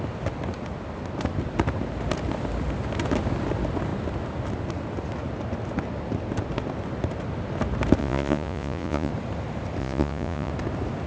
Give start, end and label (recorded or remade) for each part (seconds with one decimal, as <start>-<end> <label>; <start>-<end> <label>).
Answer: 0.0-8.0 recorded; 8.0-9.1 remade; 9.1-9.8 recorded; 9.8-10.5 remade; 10.5-11.1 recorded